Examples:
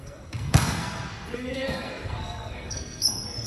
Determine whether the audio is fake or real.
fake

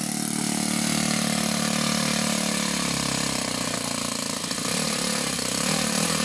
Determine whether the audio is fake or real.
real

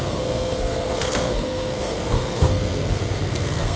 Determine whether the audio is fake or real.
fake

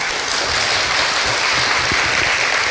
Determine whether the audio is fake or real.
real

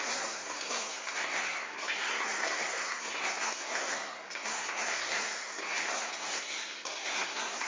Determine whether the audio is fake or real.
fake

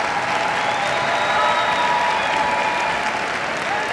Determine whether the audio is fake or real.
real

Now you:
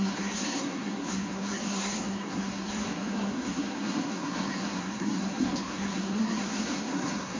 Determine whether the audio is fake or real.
fake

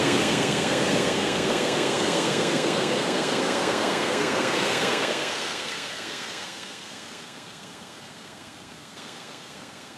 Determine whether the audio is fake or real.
fake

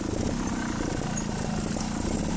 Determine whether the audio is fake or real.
real